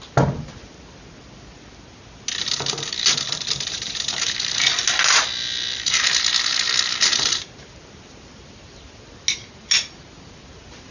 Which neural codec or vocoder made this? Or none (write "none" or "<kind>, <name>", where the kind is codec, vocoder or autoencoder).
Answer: none